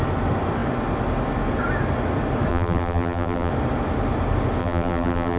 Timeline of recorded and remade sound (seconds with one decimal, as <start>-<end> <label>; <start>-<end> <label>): 0.0-2.5 recorded; 2.5-3.5 remade; 3.5-4.6 recorded; 4.6-5.4 remade